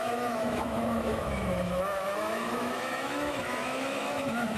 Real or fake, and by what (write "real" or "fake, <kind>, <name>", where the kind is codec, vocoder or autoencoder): fake, autoencoder, DAC-VAE